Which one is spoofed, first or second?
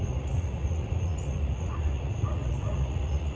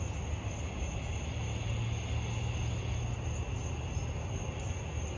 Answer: first